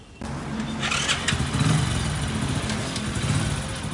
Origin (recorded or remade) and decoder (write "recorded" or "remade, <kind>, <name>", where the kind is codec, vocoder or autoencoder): recorded